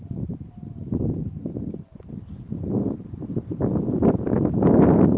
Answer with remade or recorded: recorded